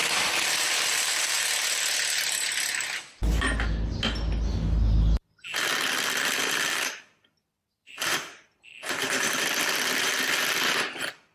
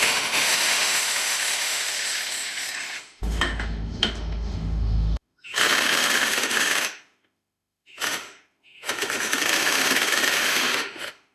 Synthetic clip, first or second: second